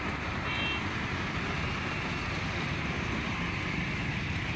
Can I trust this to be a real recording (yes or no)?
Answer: yes